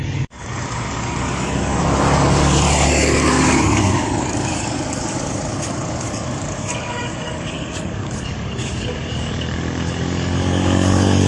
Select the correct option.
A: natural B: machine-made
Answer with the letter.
B